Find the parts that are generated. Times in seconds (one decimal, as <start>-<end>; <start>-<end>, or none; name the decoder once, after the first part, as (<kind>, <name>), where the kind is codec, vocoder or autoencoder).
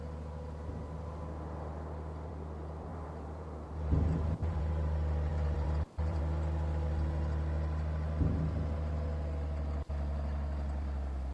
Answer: 2.9-4.6 (vocoder, BigVGAN v2); 5.3-6.2